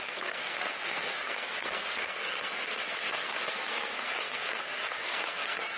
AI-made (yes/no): yes